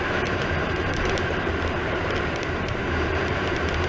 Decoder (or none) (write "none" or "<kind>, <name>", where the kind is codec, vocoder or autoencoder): vocoder, BigVGAN v2